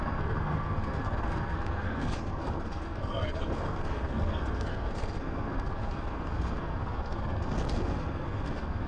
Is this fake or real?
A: fake